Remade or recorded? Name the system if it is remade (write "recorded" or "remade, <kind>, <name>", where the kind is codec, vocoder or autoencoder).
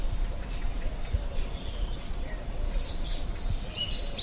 remade, vocoder, BigVGAN v2